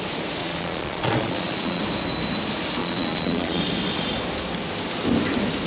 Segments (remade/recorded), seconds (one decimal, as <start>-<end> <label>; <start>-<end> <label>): 0.0-0.4 recorded; 0.4-1.8 remade; 1.8-2.8 recorded; 2.8-3.6 remade; 3.6-5.7 recorded